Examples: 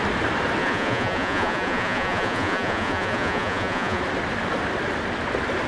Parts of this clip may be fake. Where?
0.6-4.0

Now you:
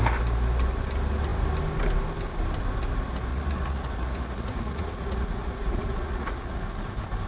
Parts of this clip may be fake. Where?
3.3-6.6

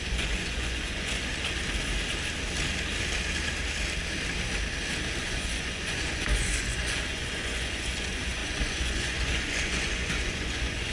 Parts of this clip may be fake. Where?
0.0-1.3; 5.2-10.9

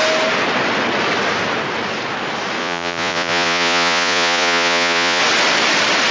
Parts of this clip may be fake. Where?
2.6-5.2

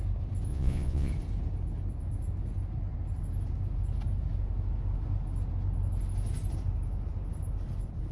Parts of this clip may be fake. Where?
0.5-1.1

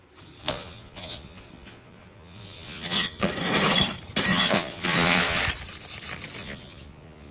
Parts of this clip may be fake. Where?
0.4-3.3; 4.3-5.4; 6.4-7.3

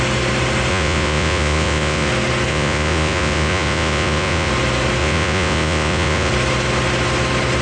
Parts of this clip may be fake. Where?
0.7-2.1; 2.5-4.5; 5.0-6.3